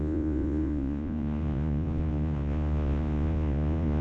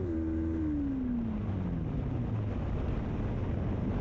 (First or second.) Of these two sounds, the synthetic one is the first